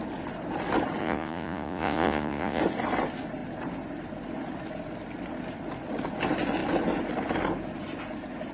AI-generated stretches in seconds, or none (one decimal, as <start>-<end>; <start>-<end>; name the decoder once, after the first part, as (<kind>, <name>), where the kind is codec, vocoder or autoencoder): 1.0-2.6 (vocoder, Vocos)